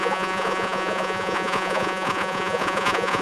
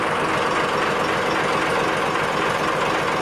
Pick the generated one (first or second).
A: first